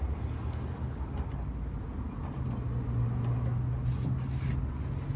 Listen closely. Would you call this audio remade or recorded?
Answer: recorded